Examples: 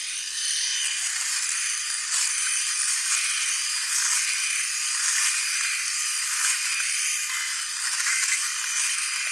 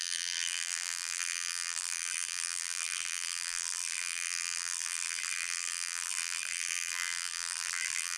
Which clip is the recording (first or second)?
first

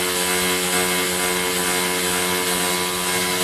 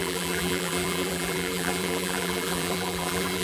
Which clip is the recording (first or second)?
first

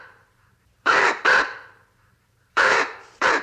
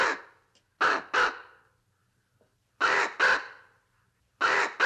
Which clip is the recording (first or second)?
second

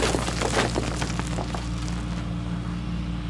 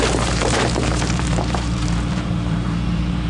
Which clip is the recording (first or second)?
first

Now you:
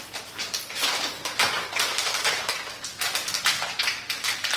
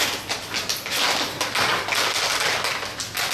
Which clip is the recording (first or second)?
second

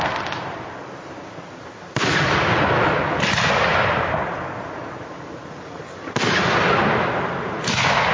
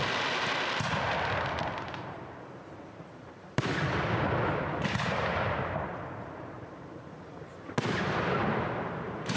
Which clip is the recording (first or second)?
first